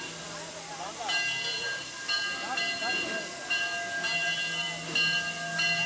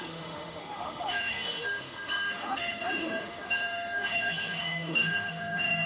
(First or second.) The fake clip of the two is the second